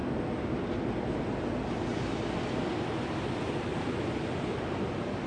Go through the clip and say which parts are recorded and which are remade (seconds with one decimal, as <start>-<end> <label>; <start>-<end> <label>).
0.0-5.3 recorded